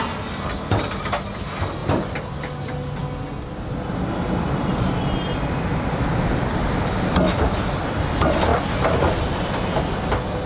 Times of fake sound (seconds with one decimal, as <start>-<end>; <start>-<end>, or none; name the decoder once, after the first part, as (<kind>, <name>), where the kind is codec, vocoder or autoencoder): 1.8-2.6 (vocoder, BigVGAN v2)